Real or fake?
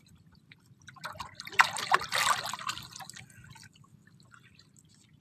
real